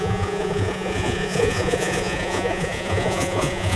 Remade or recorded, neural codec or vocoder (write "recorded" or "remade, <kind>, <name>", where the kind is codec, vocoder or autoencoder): remade, vocoder, Vocos